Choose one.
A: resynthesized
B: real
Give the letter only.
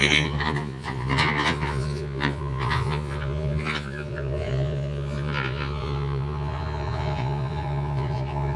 A